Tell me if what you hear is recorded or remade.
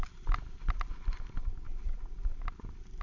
recorded